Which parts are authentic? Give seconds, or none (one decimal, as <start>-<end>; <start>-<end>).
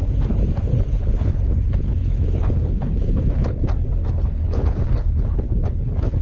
0.0-0.7; 3.6-4.0